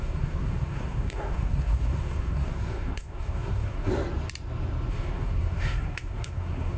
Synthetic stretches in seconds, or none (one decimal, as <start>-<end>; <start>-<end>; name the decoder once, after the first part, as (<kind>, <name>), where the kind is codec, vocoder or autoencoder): 0.0-3.9 (codec, SNAC); 4.9-6.8

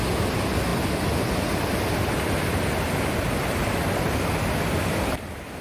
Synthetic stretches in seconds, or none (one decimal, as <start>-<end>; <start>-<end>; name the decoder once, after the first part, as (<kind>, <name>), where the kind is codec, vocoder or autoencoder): 0.7-2.1 (vocoder, BigVGAN v2); 3.6-5.6

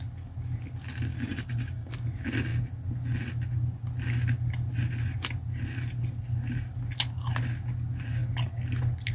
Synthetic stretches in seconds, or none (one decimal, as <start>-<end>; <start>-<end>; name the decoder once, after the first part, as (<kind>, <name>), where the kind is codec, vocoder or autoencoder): 1.1-1.9 (codec, DAC)

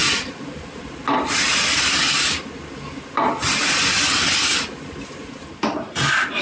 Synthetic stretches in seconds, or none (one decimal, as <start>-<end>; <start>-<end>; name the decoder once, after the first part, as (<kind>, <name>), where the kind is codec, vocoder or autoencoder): 0.0-1.5 (vocoder, BigVGAN v2); 5.3-6.4

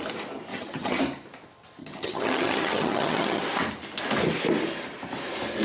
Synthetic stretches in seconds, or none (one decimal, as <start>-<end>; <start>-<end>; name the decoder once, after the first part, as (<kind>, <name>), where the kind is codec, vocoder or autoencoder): 0.5-1.0 (vocoder, HiFi-GAN); 1.8-3.4